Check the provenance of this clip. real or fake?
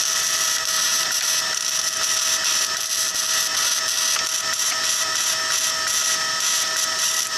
real